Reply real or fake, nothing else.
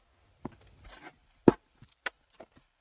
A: real